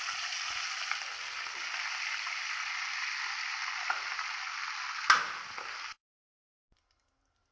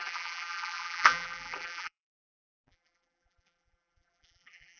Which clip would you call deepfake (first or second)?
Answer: second